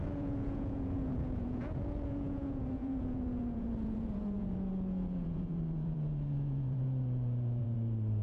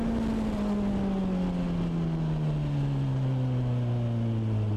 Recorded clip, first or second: second